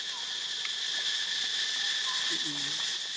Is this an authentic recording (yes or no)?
yes